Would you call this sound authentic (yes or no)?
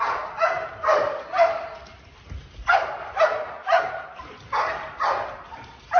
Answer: yes